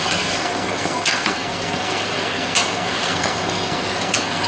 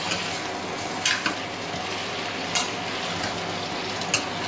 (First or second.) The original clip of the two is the second